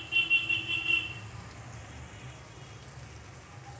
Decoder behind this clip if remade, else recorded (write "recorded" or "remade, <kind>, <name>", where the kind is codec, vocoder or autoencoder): recorded